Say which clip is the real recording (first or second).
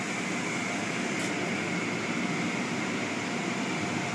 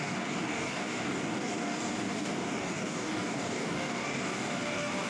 first